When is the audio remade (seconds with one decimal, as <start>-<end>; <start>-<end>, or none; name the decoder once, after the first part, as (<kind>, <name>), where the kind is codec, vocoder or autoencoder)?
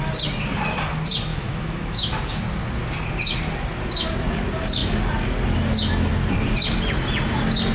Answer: 1.3-2.4 (autoencoder, DAC-VAE)